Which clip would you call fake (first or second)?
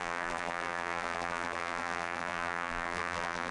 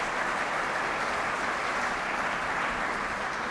first